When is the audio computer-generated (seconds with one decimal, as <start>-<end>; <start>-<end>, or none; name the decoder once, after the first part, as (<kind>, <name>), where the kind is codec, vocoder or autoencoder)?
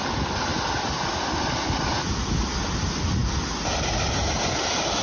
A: none